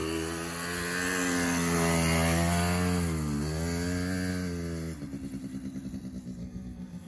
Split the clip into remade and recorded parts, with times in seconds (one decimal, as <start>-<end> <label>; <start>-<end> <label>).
0.0-6.4 recorded; 6.4-7.1 remade

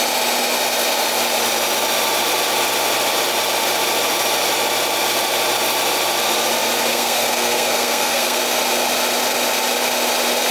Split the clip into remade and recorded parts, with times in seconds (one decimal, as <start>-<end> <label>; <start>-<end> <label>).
0.0-6.9 recorded; 6.9-8.4 remade; 8.4-10.5 recorded

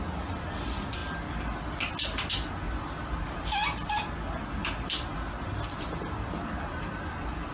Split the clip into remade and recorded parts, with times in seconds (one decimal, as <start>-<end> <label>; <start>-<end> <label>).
0.0-7.5 recorded